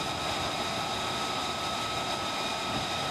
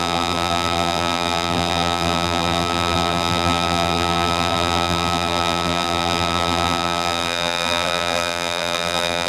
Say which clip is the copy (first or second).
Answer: second